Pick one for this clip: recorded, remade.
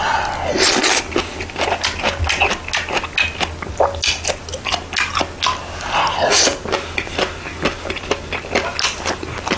recorded